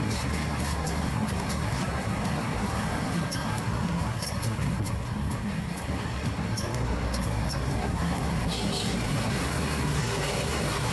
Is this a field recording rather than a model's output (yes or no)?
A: no